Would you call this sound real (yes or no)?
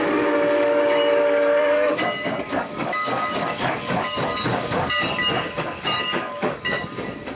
no